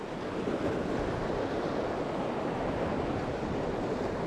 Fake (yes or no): no